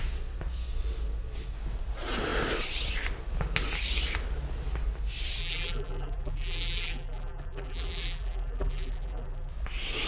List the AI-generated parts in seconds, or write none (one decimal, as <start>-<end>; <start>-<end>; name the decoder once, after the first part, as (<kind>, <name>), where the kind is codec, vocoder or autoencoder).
5.4-9.5 (vocoder, BigVGAN v2)

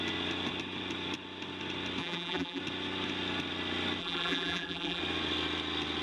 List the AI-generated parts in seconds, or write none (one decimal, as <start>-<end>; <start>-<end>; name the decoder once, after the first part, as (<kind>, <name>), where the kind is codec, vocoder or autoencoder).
2.0-2.6 (vocoder, BigVGAN v2); 4.0-5.0

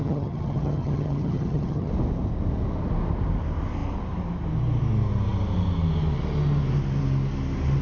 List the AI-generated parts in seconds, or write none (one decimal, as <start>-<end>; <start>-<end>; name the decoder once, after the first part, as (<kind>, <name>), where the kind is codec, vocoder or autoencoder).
0.0-1.9 (vocoder, HiFi-GAN)

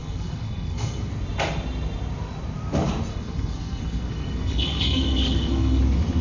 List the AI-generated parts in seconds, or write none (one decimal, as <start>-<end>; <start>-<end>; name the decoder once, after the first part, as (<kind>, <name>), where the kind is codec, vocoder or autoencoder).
0.0-1.1 (codec, SNAC); 3.1-5.8

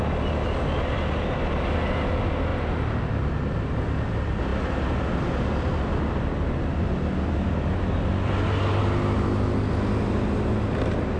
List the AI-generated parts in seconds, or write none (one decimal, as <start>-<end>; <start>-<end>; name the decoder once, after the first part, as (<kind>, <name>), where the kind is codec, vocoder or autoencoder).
none